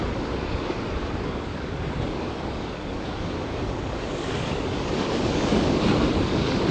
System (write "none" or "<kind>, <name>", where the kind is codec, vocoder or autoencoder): codec, DAC